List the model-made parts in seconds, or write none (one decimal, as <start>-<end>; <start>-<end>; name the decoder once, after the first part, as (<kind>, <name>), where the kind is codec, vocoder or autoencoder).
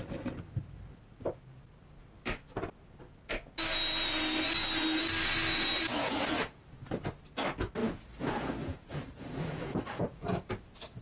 5.9-6.6 (vocoder, Vocos); 7.8-10.5